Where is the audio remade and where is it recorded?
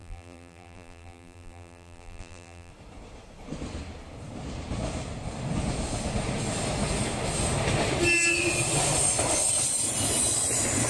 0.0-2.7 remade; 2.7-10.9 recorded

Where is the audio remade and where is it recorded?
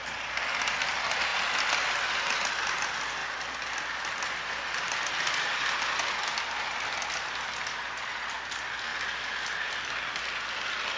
0.0-11.0 recorded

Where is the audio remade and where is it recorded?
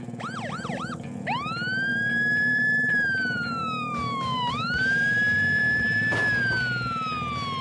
0.0-1.9 recorded; 1.9-6.4 remade; 6.4-7.6 recorded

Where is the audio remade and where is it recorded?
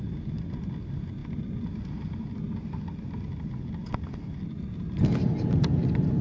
0.0-6.2 recorded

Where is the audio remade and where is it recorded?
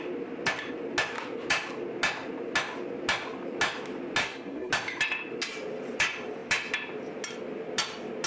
0.0-4.2 recorded; 4.2-4.7 remade; 4.7-8.3 recorded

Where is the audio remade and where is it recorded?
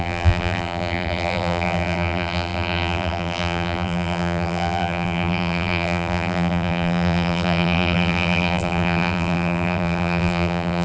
0.0-10.8 remade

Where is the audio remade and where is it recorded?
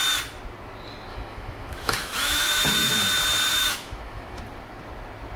0.0-1.1 recorded; 1.1-2.9 remade; 2.9-3.5 recorded; 3.5-4.4 remade; 4.4-5.4 recorded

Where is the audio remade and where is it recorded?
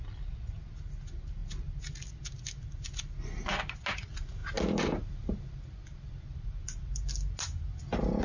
0.0-8.2 recorded